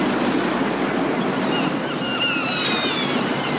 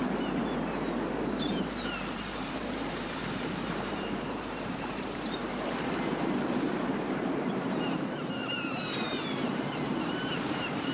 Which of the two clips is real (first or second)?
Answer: first